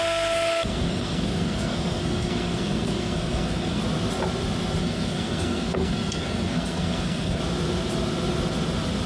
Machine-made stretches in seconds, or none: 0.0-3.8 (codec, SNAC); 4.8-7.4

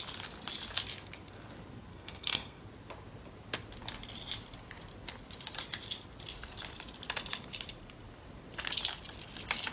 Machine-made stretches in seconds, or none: 1.9-2.6 (codec, SNAC)